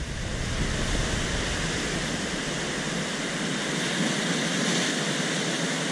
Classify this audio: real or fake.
real